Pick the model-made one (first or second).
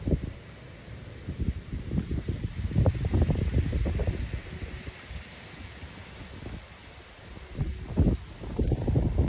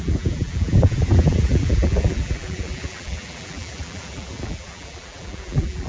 second